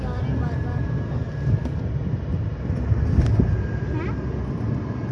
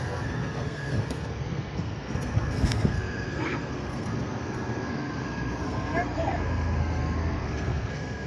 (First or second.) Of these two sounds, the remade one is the second